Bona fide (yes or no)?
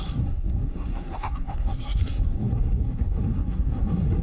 no